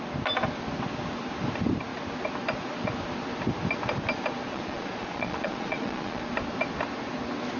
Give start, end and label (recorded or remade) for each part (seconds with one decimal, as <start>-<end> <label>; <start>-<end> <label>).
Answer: 0.0-4.5 recorded; 4.5-6.2 remade; 6.2-7.6 recorded

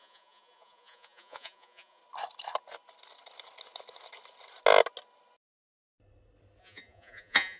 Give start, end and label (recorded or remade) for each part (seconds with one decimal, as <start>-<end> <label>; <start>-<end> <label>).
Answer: 0.0-2.0 remade; 2.0-6.6 recorded; 6.6-7.6 remade

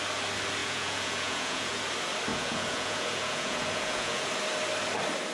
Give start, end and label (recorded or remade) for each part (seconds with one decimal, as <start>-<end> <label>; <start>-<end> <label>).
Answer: 0.0-0.6 recorded; 0.6-1.8 remade; 1.8-2.3 recorded; 2.3-4.3 remade; 4.3-5.3 recorded

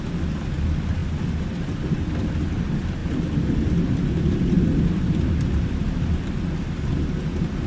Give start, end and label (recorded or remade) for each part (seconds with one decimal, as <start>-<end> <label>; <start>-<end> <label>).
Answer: 0.0-7.7 recorded

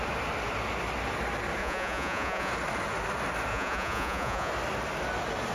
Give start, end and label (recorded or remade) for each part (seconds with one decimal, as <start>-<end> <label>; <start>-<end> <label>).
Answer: 0.0-1.6 recorded; 1.6-2.5 remade; 2.5-3.5 recorded; 3.5-4.5 remade; 4.5-5.5 recorded

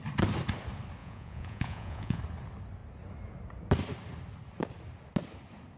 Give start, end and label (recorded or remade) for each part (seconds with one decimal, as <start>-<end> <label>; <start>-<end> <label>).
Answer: 0.0-1.0 recorded; 1.0-2.2 remade; 2.2-5.8 recorded

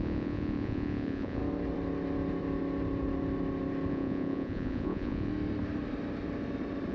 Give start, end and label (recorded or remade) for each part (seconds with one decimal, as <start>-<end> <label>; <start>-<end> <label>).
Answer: 0.0-1.4 remade; 1.4-3.9 recorded; 3.9-5.3 remade; 5.3-6.9 recorded

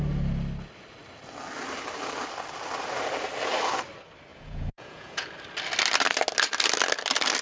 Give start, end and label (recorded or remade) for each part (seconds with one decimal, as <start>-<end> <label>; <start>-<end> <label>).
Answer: 0.0-4.3 recorded; 4.3-5.3 remade; 5.3-7.4 recorded